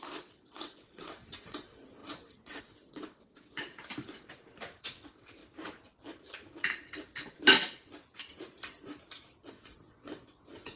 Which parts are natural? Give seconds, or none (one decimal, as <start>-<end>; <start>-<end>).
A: 3.7-4.8; 5.4-9.5